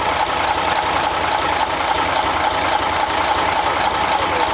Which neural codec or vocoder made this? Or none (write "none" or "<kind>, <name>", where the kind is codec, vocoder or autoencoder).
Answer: none